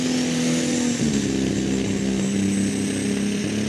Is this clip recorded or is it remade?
recorded